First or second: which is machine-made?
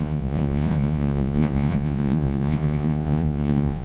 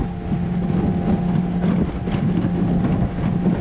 first